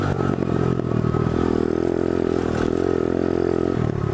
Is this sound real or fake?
real